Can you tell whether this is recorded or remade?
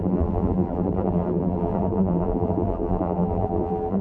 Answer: remade